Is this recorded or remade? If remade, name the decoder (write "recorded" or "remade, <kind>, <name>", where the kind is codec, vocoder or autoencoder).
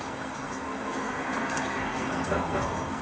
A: remade, codec, SNAC